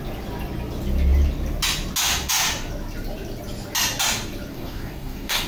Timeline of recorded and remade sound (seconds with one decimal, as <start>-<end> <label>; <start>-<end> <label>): 0.0-4.5 recorded; 4.5-5.5 remade